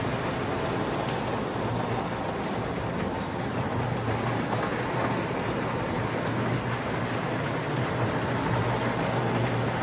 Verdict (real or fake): real